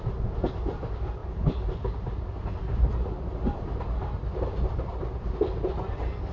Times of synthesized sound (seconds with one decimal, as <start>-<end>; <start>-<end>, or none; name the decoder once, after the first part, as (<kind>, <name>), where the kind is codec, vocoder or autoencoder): none